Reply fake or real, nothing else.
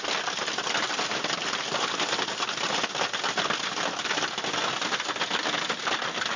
real